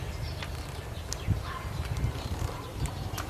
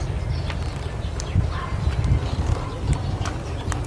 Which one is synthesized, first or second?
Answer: first